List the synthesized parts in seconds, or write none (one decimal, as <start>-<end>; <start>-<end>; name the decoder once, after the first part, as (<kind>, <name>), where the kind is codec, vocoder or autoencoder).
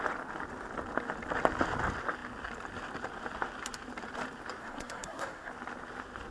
4.6-5.5 (codec, SNAC)